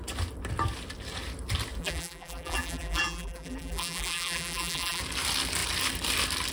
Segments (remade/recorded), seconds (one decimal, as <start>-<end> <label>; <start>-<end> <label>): 0.0-1.8 recorded; 1.8-5.0 remade; 5.0-6.5 recorded